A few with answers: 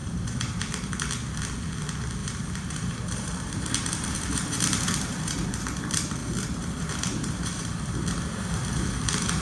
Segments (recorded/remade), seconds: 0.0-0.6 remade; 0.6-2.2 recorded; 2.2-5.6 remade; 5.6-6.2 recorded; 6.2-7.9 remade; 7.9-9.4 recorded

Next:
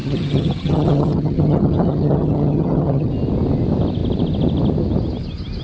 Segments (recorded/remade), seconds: 0.0-3.1 remade; 3.1-5.6 recorded